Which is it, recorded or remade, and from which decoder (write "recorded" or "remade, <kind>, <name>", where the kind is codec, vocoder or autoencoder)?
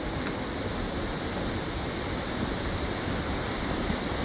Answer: recorded